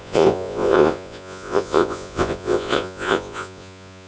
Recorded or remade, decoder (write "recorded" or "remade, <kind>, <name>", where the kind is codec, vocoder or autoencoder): remade, vocoder, Vocos